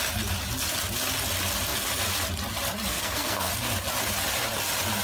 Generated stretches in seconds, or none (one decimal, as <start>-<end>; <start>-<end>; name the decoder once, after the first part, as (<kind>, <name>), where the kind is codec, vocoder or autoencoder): 2.9-3.5 (codec, SNAC)